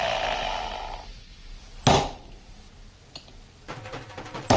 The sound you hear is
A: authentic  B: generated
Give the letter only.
A